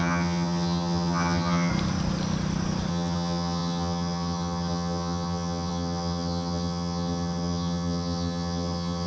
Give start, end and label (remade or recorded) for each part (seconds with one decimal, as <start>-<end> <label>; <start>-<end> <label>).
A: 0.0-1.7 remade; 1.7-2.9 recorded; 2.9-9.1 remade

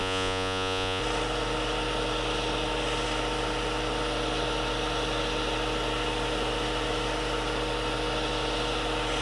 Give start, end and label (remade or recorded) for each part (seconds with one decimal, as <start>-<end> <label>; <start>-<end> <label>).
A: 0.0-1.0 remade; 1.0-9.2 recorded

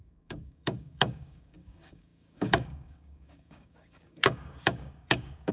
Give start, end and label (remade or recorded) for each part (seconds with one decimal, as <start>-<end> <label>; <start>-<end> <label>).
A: 0.0-5.5 remade

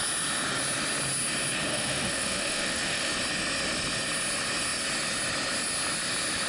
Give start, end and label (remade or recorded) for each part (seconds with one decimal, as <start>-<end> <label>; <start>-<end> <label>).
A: 0.0-1.7 recorded; 1.7-3.1 remade; 3.1-6.5 recorded